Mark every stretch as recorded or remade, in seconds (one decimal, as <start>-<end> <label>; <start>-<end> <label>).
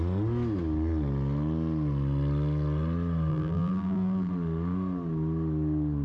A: 0.0-3.3 recorded; 3.3-4.3 remade; 4.3-6.0 recorded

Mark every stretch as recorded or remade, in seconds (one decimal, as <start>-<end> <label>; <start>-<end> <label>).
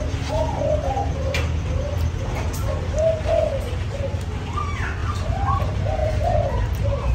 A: 0.0-5.0 recorded; 5.0-5.5 remade; 5.5-6.0 recorded; 6.0-6.5 remade; 6.5-7.1 recorded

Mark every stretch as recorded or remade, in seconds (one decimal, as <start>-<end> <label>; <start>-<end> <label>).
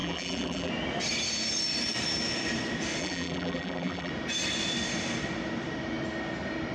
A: 0.0-0.7 remade; 0.7-3.0 recorded; 3.0-4.1 remade; 4.1-6.7 recorded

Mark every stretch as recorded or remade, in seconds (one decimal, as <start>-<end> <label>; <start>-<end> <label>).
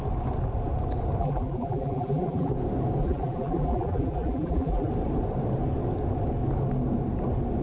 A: 0.0-1.2 recorded; 1.2-2.5 remade; 2.5-3.0 recorded; 3.0-4.9 remade; 4.9-7.6 recorded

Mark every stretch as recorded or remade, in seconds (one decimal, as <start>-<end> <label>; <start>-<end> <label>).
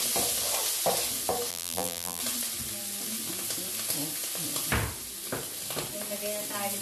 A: 0.0-1.5 recorded; 1.5-2.2 remade; 2.2-6.8 recorded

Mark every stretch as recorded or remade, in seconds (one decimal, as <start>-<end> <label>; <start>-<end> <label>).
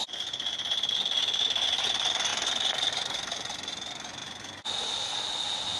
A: 0.0-5.8 recorded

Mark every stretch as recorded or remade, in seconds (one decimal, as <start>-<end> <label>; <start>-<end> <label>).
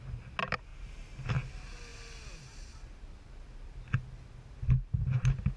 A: 0.0-0.7 recorded; 0.7-1.2 remade; 1.2-5.6 recorded